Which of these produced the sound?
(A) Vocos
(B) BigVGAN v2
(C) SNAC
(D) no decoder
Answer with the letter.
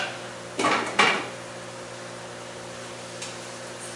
D